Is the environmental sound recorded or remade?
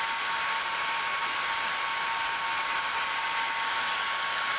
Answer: recorded